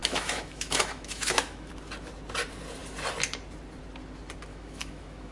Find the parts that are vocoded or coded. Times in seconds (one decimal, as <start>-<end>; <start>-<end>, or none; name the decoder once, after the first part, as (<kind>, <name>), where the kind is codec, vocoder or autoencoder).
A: 0.0-1.7 (autoencoder, DAC-VAE); 4.5-5.3

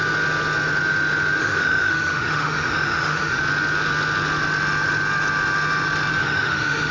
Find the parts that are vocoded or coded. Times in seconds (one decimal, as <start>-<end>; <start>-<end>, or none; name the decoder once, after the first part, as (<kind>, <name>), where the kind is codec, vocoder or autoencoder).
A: 1.4-3.4 (autoencoder, DAC-VAE); 6.2-6.9